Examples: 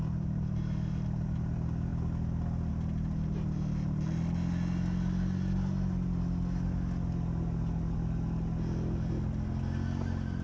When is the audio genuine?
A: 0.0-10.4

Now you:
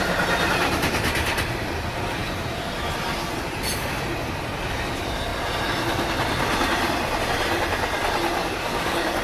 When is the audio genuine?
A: 0.0-8.4

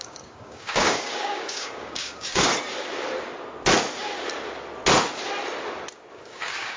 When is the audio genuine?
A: 2.5-6.1

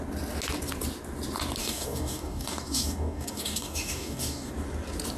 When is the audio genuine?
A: 0.0-1.6; 4.5-5.2

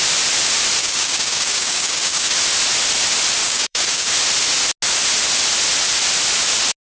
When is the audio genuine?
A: 0.0-0.8; 2.3-3.4; 4.1-6.8

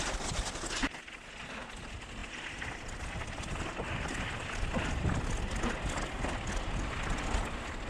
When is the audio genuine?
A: 0.0-7.9

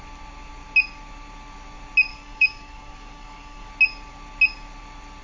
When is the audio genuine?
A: 0.0-2.1; 3.7-5.2

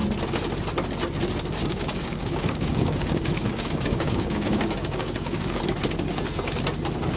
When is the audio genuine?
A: 0.0-1.6; 5.6-7.2